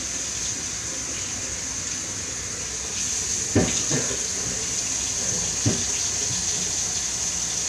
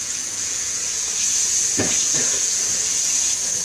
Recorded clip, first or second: first